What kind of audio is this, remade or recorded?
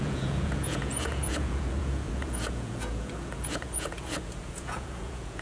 remade